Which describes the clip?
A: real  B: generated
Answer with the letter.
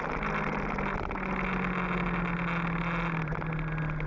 A